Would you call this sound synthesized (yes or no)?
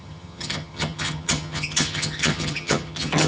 yes